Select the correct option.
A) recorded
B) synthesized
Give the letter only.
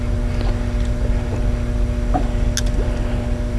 A